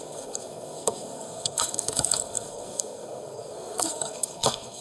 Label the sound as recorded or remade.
remade